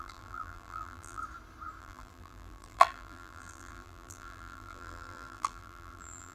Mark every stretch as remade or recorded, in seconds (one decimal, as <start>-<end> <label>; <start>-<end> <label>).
0.0-1.2 remade; 1.2-1.8 recorded; 1.8-6.3 remade